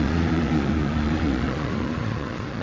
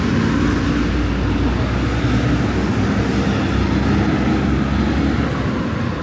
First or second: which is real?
second